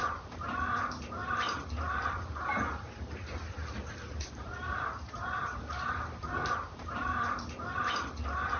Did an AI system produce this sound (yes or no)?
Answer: yes